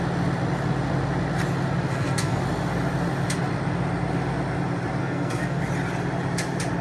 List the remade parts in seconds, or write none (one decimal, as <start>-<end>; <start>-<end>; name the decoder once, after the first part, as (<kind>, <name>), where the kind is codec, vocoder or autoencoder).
1.9-2.4 (codec, SNAC); 5.0-5.6